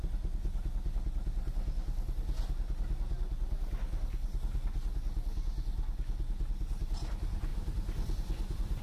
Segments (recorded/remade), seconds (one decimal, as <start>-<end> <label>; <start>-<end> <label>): 0.0-8.8 recorded